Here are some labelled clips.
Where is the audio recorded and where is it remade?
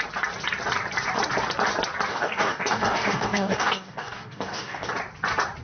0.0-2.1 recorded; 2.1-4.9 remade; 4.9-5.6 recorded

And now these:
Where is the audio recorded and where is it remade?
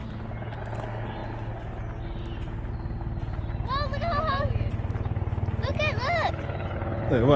0.0-0.6 remade; 0.6-7.4 recorded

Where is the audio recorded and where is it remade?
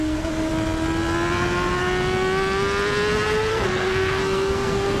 0.0-0.5 remade; 0.5-3.5 recorded; 3.5-5.0 remade